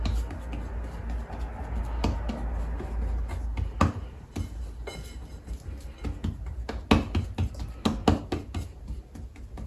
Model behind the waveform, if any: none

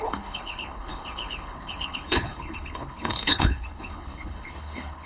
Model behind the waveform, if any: codec, HILCodec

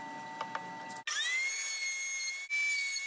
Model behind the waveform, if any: none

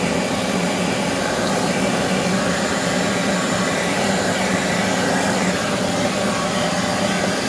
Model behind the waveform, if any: none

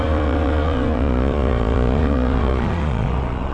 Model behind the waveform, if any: vocoder, Vocos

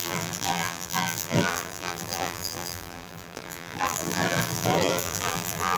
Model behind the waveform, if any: vocoder, BigVGAN v2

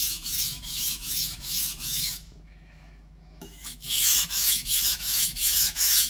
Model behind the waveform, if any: autoencoder, DAC-VAE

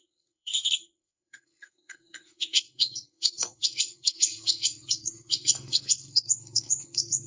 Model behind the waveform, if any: codec, SNAC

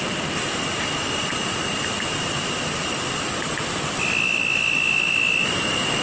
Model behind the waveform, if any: none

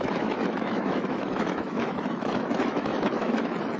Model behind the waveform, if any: autoencoder, DAC-VAE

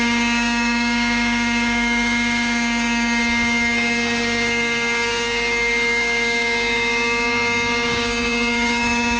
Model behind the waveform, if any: codec, DAC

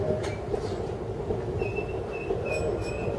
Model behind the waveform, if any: none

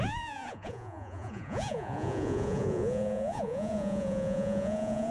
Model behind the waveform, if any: vocoder, Vocos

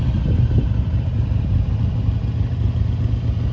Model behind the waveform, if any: none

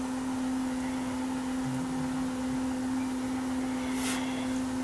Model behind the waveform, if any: none